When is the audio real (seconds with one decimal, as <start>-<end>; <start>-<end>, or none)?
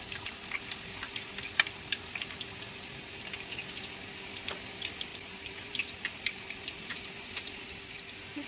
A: 0.0-8.5